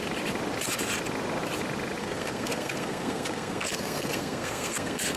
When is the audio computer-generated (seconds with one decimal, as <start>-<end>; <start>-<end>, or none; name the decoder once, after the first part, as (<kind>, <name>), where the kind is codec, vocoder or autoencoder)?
2.0-5.2 (codec, SNAC)